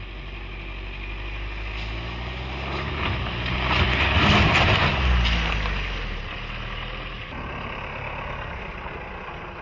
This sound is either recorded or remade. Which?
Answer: recorded